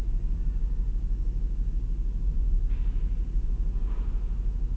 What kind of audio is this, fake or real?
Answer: real